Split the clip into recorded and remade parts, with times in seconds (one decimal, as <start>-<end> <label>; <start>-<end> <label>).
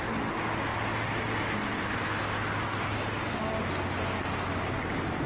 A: 0.0-5.3 recorded